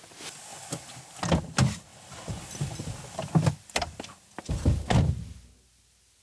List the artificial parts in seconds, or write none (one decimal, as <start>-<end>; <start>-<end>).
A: none